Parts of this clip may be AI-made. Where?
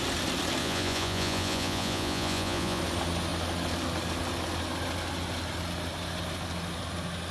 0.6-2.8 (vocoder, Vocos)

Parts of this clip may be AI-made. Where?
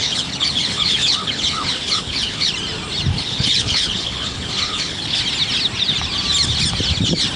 0.0-2.5 (codec, HILCodec); 3.1-5.2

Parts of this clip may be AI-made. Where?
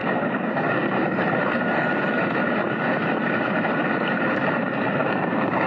0.0-1.2 (codec, DAC); 5.0-5.7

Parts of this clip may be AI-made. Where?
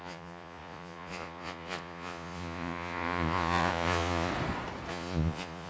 0.0-4.3 (vocoder, Vocos); 4.9-5.7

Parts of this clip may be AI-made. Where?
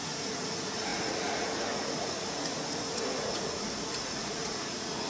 0.0-5.1 (vocoder, Vocos)